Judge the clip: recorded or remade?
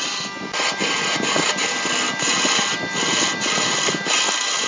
recorded